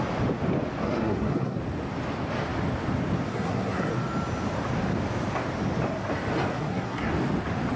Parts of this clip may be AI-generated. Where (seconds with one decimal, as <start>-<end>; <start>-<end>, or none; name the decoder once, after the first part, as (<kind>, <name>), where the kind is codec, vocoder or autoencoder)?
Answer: 0.8-1.6 (codec, SNAC); 3.3-3.9; 6.5-7.1